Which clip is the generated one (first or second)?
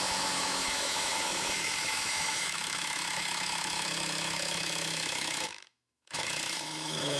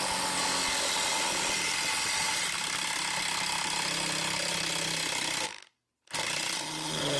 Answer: first